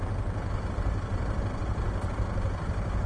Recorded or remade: remade